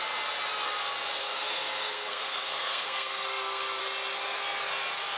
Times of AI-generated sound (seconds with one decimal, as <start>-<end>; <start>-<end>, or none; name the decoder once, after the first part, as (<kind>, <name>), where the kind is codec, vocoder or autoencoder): 1.2-3.8 (codec, SNAC)